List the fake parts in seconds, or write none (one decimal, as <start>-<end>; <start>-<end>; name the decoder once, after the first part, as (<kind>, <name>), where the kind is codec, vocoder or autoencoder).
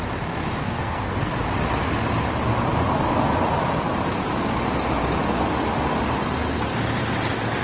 0.6-1.3 (codec, SNAC)